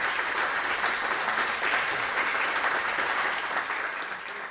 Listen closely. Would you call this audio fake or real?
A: real